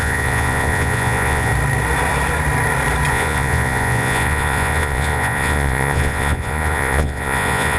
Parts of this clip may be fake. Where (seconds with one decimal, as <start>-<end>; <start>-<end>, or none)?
0.0-1.5; 3.1-7.8